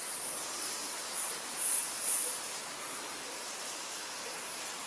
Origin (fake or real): fake